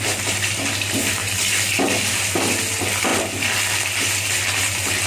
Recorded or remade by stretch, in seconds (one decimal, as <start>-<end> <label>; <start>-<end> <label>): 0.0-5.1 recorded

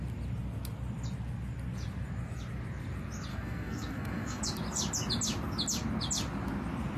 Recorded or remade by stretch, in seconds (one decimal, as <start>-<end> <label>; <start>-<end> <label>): 0.0-3.3 recorded; 3.3-4.4 remade; 4.4-7.0 recorded

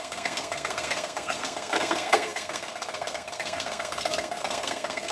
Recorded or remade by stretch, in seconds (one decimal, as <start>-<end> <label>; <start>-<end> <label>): 0.0-5.1 remade

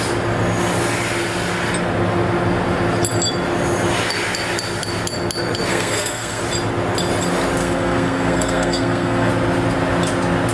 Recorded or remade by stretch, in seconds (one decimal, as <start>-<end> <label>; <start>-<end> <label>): 0.0-5.7 recorded; 5.7-6.4 remade; 6.4-7.6 recorded; 7.6-9.3 remade; 9.3-10.5 recorded

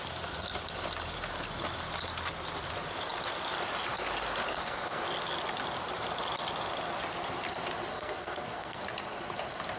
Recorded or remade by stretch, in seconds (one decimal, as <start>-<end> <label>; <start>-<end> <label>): 0.0-4.5 recorded; 4.5-5.0 remade; 5.0-7.9 recorded; 7.9-8.8 remade; 8.8-9.8 recorded